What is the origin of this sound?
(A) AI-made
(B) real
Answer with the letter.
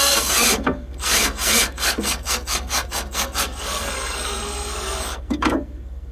A